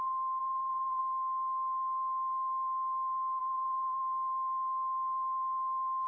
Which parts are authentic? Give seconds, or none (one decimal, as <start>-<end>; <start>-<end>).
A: 0.0-0.4; 1.0-3.4; 4.0-6.1

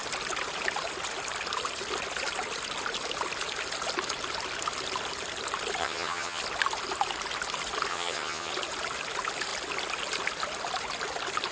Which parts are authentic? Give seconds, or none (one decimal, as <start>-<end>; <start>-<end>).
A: 0.0-5.8; 6.4-7.9; 8.5-11.5

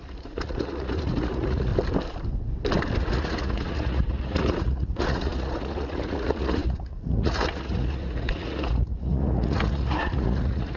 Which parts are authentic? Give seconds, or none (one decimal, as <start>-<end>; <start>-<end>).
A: 1.7-3.0

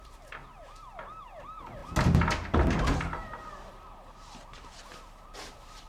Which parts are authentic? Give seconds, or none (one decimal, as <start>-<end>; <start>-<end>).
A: 0.0-5.9